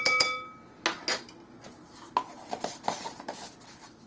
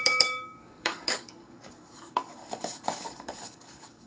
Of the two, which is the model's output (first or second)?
second